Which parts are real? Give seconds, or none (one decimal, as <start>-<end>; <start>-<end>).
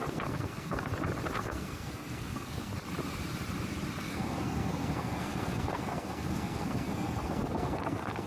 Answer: 0.9-1.4; 2.7-4.0